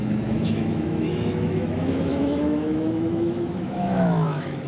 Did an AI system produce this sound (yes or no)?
yes